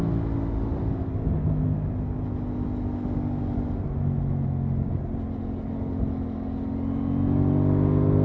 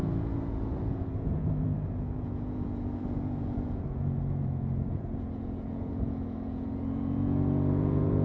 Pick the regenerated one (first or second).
second